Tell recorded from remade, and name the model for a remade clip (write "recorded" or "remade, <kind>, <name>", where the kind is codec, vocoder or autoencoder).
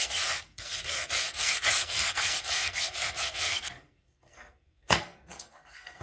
remade, codec, SNAC